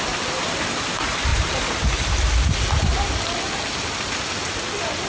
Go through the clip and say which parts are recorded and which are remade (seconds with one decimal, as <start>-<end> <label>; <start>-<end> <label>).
0.0-5.1 recorded